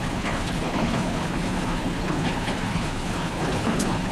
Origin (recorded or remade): remade